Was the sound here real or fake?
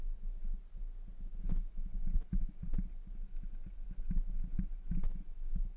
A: real